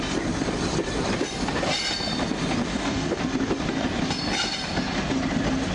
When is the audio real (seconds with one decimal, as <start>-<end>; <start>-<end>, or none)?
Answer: 0.0-2.7; 3.2-5.7